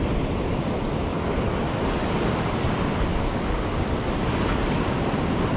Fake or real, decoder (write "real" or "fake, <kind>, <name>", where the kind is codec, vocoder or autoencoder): real